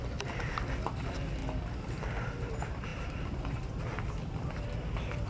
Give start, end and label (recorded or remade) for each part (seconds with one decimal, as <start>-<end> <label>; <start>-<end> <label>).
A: 0.0-1.4 remade; 1.4-2.0 recorded; 2.0-5.3 remade